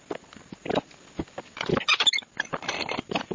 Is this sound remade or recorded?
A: recorded